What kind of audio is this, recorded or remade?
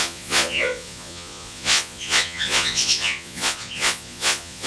remade